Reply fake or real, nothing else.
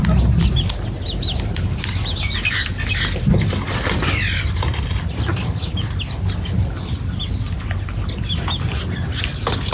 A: real